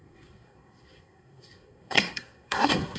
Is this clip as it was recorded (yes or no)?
no